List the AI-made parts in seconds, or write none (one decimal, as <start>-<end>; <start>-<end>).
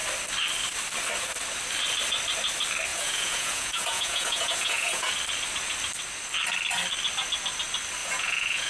2.9-5.1; 8.0-8.7